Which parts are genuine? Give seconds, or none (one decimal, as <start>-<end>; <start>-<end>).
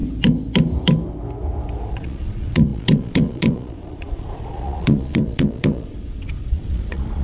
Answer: 0.0-1.9